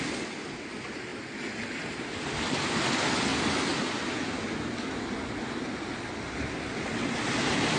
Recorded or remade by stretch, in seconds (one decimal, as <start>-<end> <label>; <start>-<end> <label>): 0.0-7.8 recorded